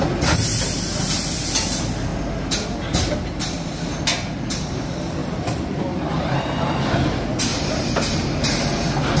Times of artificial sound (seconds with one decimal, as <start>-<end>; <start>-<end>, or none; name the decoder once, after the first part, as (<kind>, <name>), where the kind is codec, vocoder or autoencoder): 5.2-5.8 (vocoder, BigVGAN v2); 7.5-9.2